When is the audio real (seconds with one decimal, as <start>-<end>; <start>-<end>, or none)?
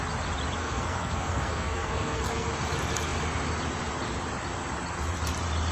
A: 0.0-0.6; 2.5-5.7